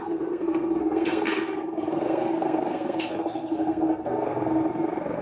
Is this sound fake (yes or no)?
yes